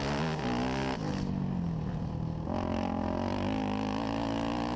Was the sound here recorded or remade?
recorded